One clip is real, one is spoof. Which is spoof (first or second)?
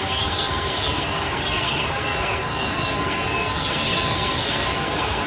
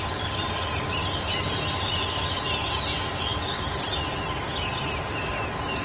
first